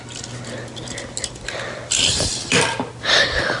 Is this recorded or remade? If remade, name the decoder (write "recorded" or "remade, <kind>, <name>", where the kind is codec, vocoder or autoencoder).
recorded